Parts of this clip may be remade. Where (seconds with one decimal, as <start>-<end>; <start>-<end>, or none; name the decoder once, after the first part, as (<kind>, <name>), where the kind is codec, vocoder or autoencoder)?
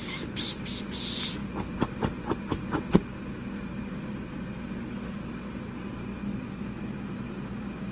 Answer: 0.0-0.6 (vocoder, BigVGAN v2)